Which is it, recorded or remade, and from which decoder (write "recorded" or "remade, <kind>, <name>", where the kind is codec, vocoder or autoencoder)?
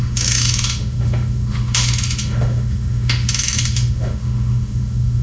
remade, autoencoder, DAC-VAE